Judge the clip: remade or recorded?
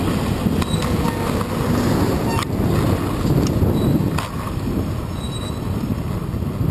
recorded